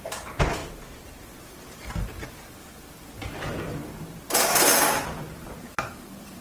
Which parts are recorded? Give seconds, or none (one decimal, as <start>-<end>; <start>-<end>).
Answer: 0.6-1.2